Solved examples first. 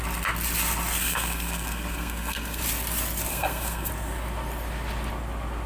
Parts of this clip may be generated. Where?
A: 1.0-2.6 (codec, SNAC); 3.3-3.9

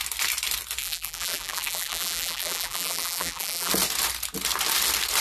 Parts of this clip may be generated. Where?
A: 0.8-3.7 (vocoder, BigVGAN v2)